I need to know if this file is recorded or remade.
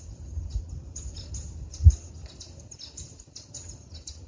recorded